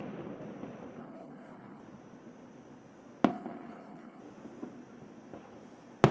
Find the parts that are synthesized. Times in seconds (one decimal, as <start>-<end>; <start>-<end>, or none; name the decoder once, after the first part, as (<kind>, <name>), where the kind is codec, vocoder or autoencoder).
1.0-1.8 (codec, HILCodec); 3.3-4.2